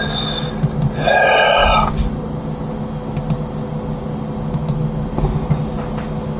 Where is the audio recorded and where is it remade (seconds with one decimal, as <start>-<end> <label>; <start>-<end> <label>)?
0.0-6.4 recorded